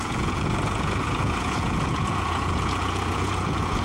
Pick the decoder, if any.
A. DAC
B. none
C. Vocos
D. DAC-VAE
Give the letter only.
C